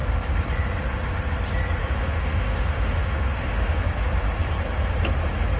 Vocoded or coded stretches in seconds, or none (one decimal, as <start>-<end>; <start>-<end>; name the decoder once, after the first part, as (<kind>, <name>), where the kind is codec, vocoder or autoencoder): 1.8-3.8 (autoencoder, DAC-VAE)